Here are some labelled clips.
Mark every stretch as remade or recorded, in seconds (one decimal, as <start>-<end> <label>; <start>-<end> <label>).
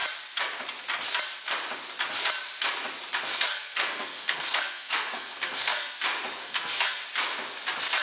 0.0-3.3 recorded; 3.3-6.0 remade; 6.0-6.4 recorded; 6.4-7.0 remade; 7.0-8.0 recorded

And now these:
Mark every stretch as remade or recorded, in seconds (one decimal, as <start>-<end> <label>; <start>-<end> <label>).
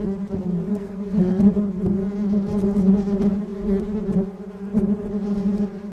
0.0-0.7 recorded; 0.7-1.4 remade; 1.4-5.9 recorded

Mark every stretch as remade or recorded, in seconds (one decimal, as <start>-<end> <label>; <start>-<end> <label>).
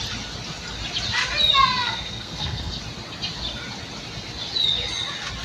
0.0-1.8 recorded; 1.8-2.8 remade; 2.8-5.4 recorded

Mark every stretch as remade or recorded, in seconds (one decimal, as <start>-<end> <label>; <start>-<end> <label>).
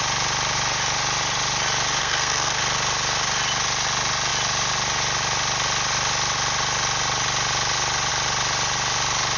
0.0-2.0 recorded; 2.0-2.6 remade; 2.6-9.4 recorded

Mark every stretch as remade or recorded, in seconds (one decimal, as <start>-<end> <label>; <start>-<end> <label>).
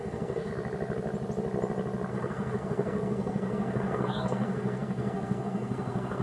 0.0-0.5 remade; 0.5-2.1 recorded; 2.1-6.2 remade